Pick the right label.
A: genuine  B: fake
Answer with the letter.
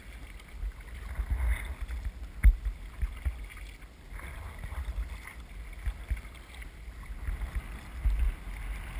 A